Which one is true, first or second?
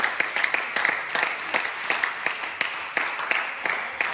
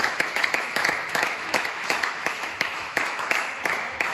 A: first